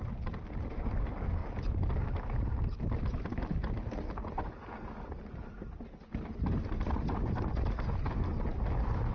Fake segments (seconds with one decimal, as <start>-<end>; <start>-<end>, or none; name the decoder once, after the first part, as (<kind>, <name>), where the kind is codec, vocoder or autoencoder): 1.4-3.4 (vocoder, BigVGAN v2); 8.5-9.1